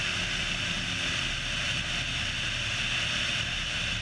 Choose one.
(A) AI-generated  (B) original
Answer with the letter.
B